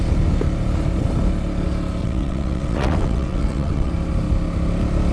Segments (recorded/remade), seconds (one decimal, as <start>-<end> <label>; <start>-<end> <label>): 0.0-2.0 recorded; 2.0-3.9 remade; 3.9-5.1 recorded